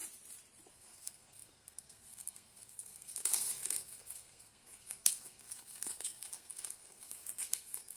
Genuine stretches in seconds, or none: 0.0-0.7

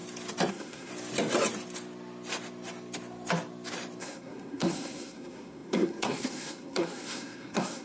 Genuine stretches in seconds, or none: 0.0-0.5; 0.9-4.0

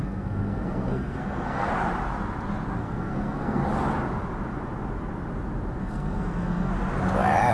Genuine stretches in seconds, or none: 1.7-2.8; 3.6-5.8; 6.7-7.5

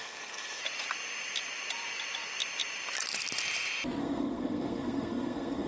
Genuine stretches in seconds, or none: 0.6-4.0